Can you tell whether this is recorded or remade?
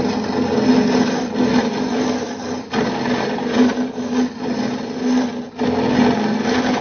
recorded